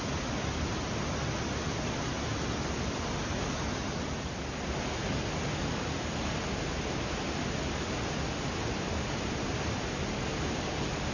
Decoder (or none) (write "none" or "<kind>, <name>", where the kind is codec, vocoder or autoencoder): none